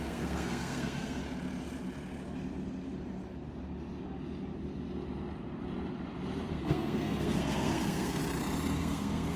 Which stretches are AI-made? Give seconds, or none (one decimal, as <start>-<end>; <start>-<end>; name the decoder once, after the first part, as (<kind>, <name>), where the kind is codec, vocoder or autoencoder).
0.0-1.2 (codec, SNAC); 6.5-8.2; 8.8-9.4